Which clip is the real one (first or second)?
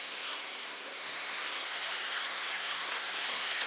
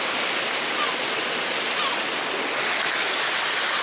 second